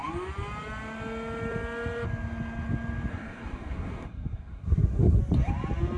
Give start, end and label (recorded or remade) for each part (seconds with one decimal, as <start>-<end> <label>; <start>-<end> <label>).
0.0-3.1 recorded; 3.1-5.2 remade; 5.2-6.0 recorded